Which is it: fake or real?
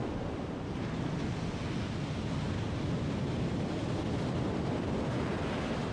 real